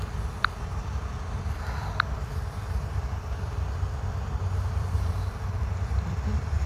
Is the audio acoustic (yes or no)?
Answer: no